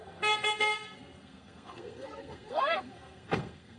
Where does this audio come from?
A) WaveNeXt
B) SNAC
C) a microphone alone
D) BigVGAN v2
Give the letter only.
B